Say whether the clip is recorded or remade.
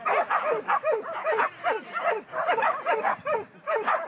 recorded